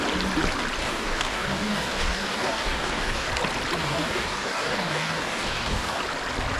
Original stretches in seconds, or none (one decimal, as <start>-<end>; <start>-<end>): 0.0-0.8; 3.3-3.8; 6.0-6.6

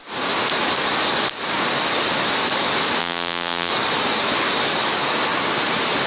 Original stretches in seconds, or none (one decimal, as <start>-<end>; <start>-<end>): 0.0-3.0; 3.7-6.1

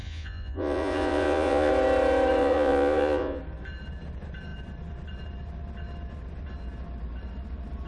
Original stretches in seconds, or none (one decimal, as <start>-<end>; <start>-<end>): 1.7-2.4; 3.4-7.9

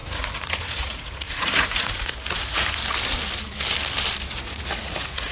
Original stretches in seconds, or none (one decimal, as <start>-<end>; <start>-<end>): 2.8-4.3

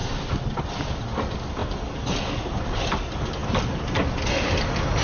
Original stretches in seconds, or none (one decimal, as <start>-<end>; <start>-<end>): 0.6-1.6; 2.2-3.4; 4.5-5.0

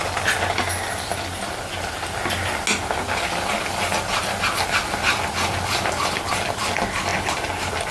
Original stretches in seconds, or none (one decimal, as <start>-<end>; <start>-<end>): 0.0-7.9